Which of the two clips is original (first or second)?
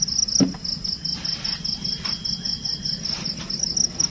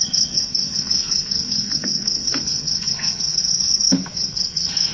first